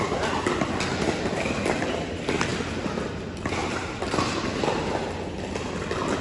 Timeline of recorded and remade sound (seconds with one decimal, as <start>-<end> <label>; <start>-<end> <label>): 0.0-6.2 recorded